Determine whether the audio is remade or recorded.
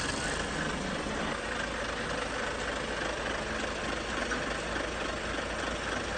recorded